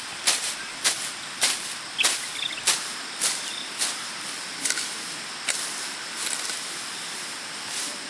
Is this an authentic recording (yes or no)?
no